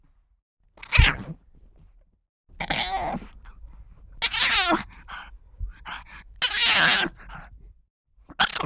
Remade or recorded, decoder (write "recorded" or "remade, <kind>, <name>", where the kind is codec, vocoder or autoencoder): recorded